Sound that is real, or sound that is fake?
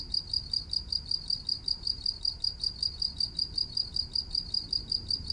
real